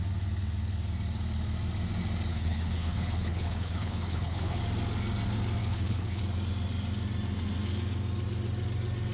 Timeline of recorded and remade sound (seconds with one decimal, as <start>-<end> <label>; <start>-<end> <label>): 0.0-2.3 recorded; 2.3-4.6 remade; 4.6-5.6 recorded; 5.6-6.2 remade; 6.2-9.1 recorded